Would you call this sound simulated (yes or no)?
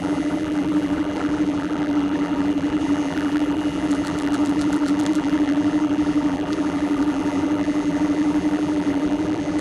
yes